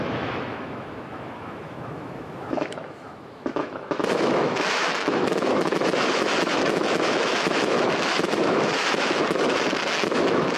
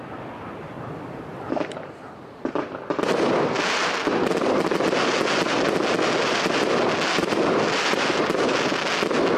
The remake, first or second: first